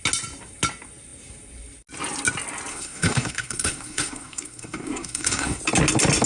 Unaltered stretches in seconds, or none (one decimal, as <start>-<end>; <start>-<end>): 0.0-2.7; 5.6-6.3